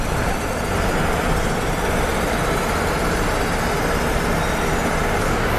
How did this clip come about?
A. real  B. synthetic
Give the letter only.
A